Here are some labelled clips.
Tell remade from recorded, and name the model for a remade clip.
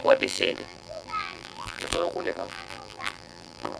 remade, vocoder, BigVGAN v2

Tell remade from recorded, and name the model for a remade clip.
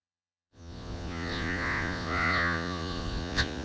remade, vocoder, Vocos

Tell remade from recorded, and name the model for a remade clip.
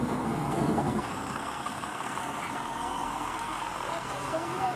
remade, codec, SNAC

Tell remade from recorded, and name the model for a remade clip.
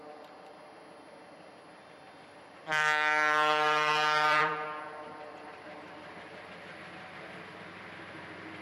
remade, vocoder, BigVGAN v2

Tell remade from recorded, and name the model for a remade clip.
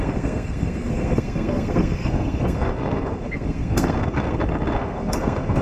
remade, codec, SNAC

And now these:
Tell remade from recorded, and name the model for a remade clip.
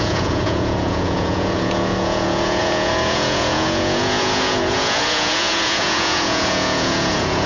remade, vocoder, Vocos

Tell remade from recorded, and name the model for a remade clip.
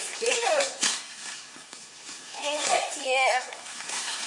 remade, codec, SNAC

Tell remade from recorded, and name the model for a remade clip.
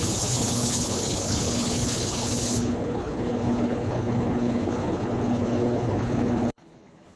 remade, codec, HILCodec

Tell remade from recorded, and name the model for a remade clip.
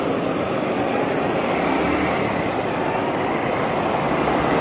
recorded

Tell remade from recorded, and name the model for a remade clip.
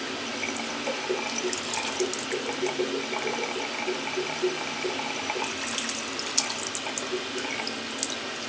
recorded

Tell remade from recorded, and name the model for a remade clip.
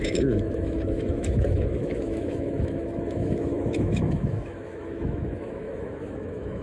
remade, autoencoder, DAC-VAE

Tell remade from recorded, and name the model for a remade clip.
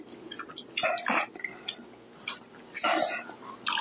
recorded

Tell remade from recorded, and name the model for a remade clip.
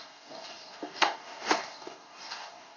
remade, codec, DAC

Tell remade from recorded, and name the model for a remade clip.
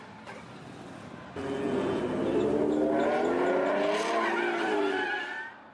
recorded